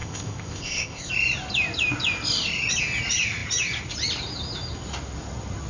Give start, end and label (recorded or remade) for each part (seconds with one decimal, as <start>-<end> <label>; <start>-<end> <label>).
0.0-1.1 remade; 1.1-5.7 recorded